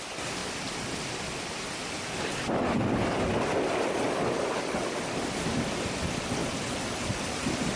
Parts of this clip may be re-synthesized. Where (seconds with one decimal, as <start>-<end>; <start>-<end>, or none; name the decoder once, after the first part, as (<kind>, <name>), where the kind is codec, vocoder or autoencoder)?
6.4-7.8 (vocoder, BigVGAN v2)